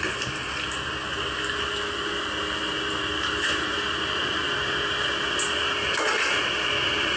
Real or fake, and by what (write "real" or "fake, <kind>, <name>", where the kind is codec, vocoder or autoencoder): real